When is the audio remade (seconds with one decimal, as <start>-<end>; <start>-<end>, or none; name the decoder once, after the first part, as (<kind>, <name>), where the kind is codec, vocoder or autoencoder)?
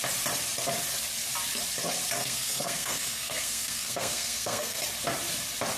2.2-4.8 (codec, SNAC)